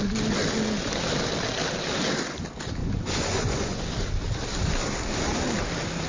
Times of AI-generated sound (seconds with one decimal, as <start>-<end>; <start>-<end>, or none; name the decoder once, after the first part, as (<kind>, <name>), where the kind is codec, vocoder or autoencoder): 2.8-3.8 (vocoder, Vocos)